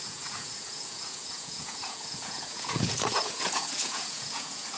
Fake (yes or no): yes